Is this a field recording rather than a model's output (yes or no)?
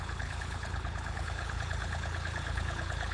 no